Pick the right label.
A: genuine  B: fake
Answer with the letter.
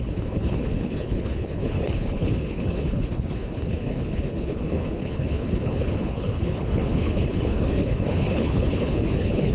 B